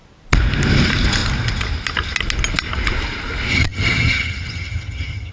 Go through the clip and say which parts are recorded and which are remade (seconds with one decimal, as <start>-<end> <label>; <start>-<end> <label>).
0.0-3.5 recorded; 3.5-5.3 remade